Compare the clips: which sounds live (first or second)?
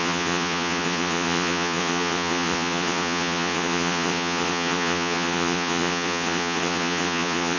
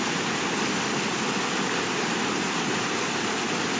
second